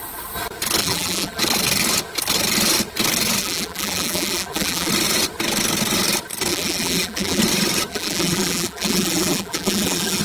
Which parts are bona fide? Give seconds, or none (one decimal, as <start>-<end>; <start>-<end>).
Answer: 0.0-0.8; 1.4-3.4; 4.9-6.5; 7.4-7.9